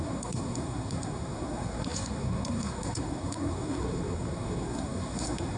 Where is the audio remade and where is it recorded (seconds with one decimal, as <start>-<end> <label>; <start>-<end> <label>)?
0.0-5.6 remade